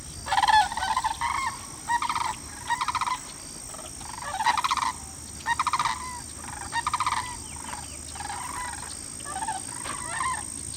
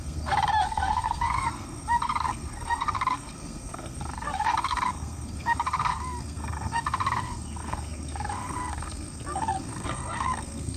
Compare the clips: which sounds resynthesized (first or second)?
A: second